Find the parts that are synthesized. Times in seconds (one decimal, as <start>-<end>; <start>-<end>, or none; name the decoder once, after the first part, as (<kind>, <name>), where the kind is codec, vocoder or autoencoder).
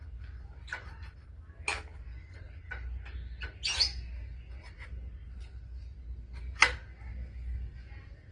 none